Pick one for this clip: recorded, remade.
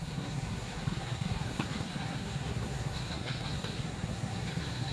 remade